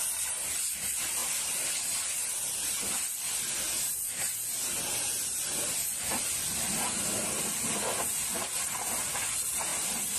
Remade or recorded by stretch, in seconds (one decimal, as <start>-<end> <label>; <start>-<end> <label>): 0.0-10.2 recorded